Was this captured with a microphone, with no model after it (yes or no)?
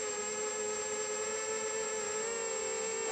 yes